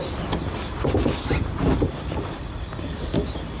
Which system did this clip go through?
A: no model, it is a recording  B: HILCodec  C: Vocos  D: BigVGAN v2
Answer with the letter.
A